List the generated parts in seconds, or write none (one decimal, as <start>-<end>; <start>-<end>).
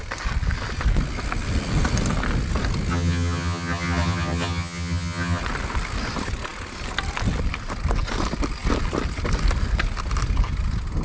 2.9-5.4